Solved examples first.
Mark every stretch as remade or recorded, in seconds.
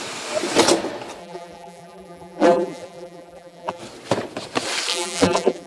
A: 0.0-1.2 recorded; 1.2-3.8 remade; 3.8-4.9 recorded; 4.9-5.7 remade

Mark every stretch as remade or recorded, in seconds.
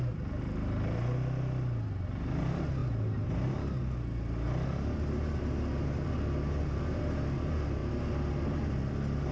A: 0.0-2.8 recorded; 2.8-3.8 remade; 3.8-9.3 recorded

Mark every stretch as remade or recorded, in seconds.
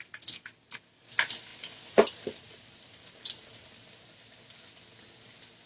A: 0.0-1.5 recorded; 1.5-4.0 remade; 4.0-5.7 recorded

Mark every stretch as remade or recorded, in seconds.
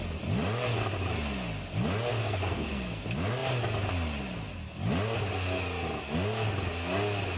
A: 0.0-2.2 recorded; 2.2-3.0 remade; 3.0-7.4 recorded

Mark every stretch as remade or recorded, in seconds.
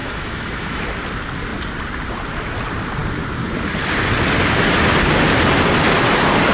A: 0.0-0.8 remade; 0.8-6.5 recorded